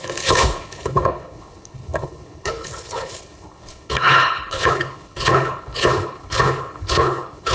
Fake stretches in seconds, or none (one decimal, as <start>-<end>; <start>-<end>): 0.0-7.5

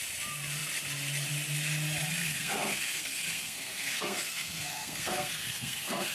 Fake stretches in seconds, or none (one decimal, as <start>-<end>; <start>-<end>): 2.2-6.1

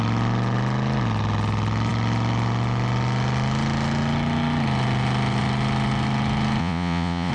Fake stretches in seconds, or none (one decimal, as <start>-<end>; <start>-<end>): 6.6-7.3

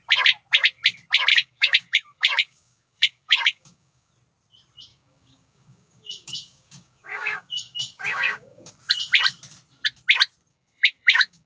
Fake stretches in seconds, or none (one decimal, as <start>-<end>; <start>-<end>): 1.3-4.1; 4.9-8.7; 10.5-11.5

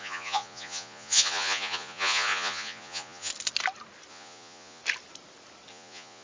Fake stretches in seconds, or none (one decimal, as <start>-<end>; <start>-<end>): 0.0-3.3; 4.1-4.8; 5.7-6.2